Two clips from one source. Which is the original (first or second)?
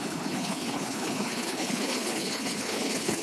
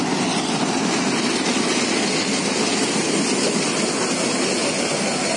second